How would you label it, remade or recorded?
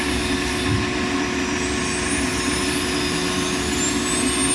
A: recorded